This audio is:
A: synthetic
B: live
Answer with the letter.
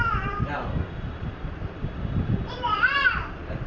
A